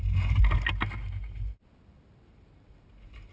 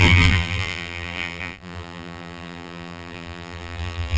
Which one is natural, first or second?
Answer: first